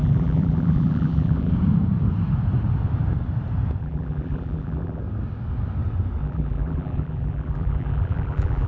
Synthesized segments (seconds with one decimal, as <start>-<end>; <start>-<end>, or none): 0.0-1.5; 3.8-5.0; 6.2-8.7